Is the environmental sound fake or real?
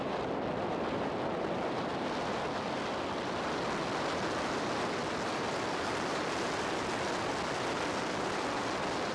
real